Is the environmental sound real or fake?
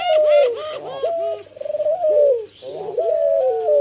real